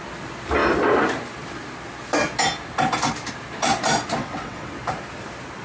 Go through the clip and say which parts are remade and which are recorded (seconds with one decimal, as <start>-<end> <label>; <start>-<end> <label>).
0.0-4.2 recorded; 4.2-4.7 remade; 4.7-5.6 recorded